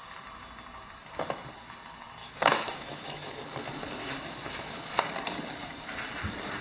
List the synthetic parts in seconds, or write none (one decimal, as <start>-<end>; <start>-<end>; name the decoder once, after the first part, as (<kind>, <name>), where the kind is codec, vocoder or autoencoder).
2.2-3.3 (autoencoder, DAC-VAE); 4.0-5.0